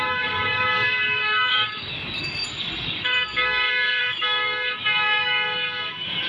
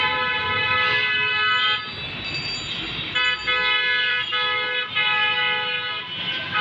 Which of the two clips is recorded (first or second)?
second